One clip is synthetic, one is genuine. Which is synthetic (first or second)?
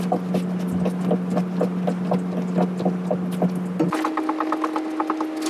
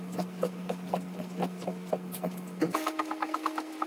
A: second